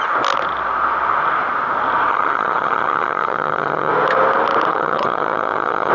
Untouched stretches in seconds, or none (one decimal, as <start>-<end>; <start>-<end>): 0.0-2.1; 3.9-4.7